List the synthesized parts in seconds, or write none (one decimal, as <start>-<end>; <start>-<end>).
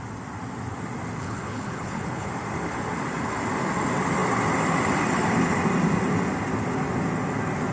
1.2-2.3